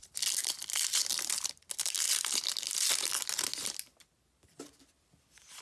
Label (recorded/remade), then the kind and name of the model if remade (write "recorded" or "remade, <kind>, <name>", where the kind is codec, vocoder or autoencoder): recorded